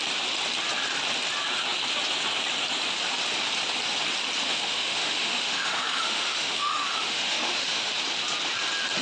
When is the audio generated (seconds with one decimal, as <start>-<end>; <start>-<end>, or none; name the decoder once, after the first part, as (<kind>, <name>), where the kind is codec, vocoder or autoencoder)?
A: 4.4-7.9 (autoencoder, DAC-VAE)